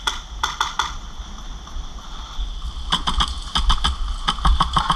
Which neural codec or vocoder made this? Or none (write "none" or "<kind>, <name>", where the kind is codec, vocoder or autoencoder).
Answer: none